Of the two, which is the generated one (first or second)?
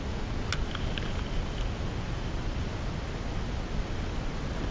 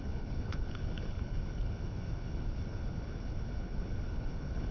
second